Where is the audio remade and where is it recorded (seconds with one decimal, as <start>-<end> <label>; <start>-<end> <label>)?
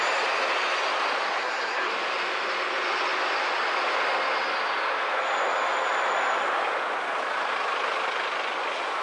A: 0.0-1.4 recorded; 1.4-1.9 remade; 1.9-9.0 recorded